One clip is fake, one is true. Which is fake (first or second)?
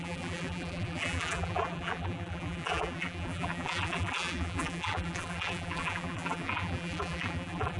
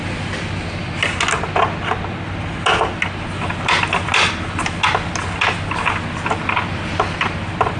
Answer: first